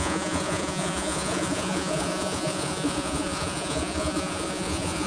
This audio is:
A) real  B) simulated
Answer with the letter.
B